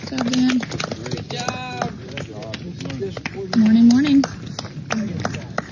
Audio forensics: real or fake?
real